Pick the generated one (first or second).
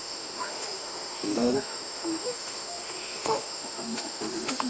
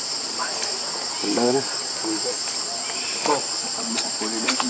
first